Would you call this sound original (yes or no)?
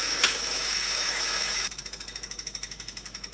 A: no